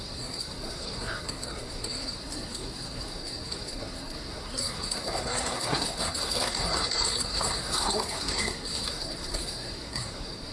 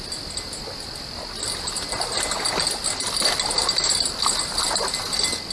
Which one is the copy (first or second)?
first